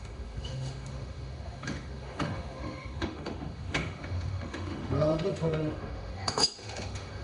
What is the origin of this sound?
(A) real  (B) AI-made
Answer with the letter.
B